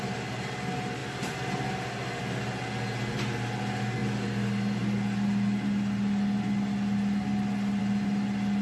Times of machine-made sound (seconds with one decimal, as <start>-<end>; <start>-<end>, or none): none